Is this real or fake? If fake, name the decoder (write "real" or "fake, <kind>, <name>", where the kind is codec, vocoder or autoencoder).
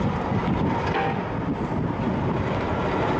real